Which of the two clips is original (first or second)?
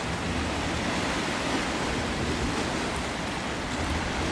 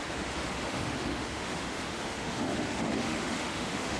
first